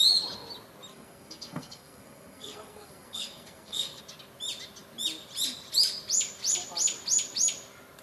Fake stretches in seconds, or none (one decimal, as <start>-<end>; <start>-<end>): 0.9-4.0